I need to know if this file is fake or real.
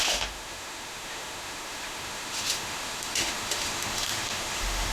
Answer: fake